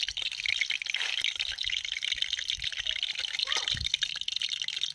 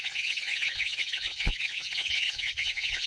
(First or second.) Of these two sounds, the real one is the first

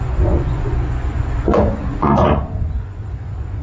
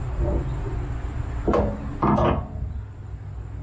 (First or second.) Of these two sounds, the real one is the second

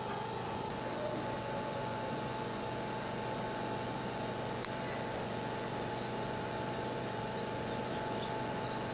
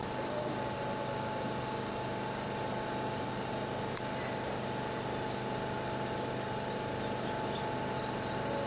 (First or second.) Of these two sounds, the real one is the second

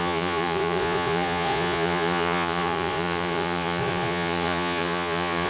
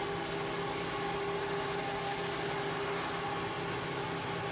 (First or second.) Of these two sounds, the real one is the second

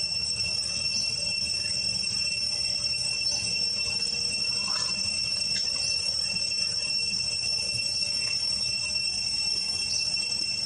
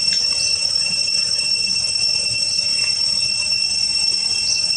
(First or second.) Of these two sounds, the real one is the first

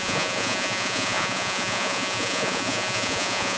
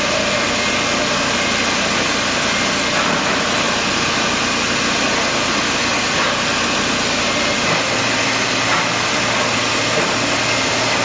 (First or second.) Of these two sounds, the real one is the second